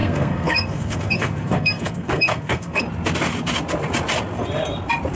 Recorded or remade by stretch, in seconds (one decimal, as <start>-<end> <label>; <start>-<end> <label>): 0.0-2.8 remade; 2.8-5.2 recorded